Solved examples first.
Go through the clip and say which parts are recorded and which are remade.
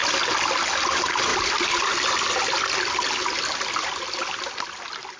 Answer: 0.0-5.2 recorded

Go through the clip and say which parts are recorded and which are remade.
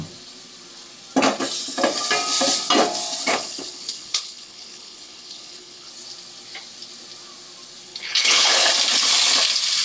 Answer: 0.0-3.3 recorded; 3.3-5.9 remade; 5.9-7.9 recorded; 7.9-8.7 remade; 8.7-9.8 recorded